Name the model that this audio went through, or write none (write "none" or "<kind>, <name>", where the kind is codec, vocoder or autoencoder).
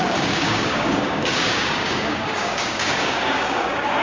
codec, DAC